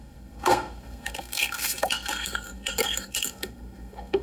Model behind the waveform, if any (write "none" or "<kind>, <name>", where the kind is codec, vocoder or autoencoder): codec, SNAC